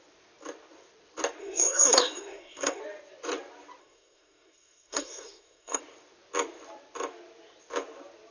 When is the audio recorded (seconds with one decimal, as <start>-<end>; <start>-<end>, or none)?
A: 0.0-1.4; 2.8-3.8; 5.8-8.3